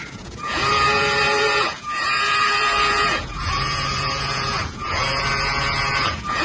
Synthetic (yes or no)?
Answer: yes